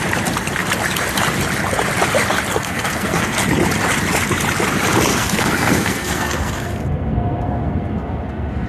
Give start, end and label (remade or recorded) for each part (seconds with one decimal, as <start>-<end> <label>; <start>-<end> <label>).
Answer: 0.0-2.5 recorded; 2.5-3.4 remade; 3.4-5.1 recorded; 5.1-8.7 remade